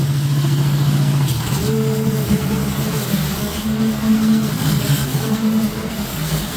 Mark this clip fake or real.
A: fake